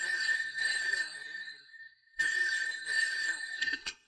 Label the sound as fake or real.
fake